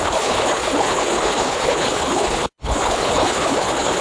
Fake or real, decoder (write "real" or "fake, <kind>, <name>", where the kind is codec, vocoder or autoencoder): fake, codec, HILCodec